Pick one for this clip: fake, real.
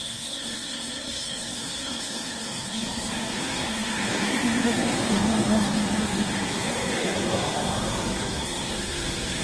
fake